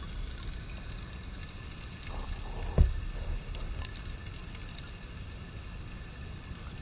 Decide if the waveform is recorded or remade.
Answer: recorded